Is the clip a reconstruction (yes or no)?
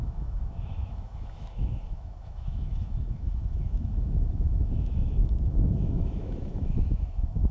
yes